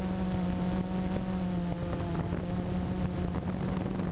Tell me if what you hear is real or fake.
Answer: real